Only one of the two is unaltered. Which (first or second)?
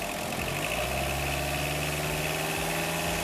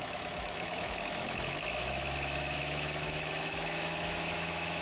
first